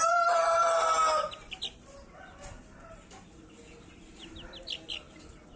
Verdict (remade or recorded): recorded